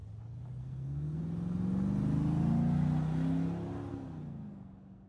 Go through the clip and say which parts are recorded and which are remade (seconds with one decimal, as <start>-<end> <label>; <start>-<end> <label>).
0.0-0.6 recorded; 0.6-1.2 remade; 1.2-3.9 recorded; 3.9-5.1 remade